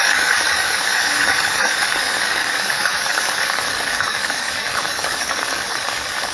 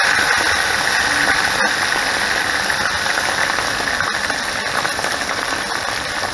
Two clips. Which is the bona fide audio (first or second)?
second